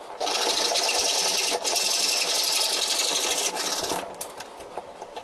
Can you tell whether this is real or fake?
real